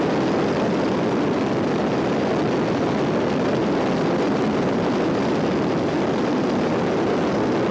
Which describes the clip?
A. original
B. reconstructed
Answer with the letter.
A